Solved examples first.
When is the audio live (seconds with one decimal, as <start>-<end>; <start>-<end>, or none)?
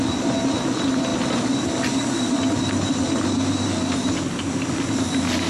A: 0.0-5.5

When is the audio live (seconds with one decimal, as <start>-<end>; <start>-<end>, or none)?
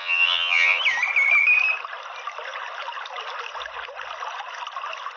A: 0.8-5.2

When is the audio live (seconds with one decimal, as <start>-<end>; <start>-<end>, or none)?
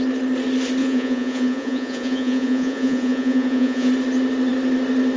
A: 0.0-0.8; 3.9-5.2